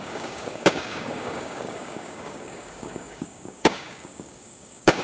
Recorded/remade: remade